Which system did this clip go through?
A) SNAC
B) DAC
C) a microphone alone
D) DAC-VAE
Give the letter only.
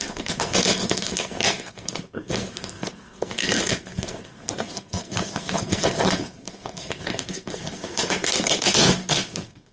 A